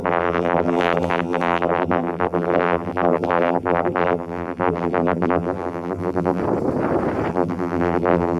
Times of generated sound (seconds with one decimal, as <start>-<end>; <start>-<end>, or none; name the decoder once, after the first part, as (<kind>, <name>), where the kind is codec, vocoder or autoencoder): 0.0-6.4 (vocoder, BigVGAN v2); 7.3-8.4